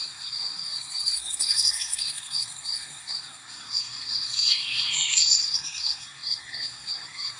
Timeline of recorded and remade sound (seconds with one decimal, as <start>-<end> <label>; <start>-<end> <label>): 0.0-7.4 remade